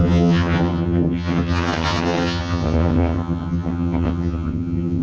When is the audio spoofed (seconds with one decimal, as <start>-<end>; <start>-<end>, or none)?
0.0-5.0